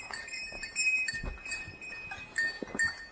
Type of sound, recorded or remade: recorded